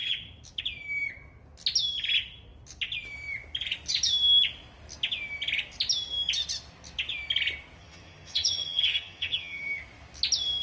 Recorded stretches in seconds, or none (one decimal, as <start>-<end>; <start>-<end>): 0.0-7.8; 9.8-10.6